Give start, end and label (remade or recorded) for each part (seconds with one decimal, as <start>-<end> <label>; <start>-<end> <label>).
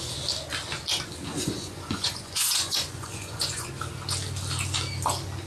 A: 0.0-1.3 recorded; 1.3-3.7 remade; 3.7-5.5 recorded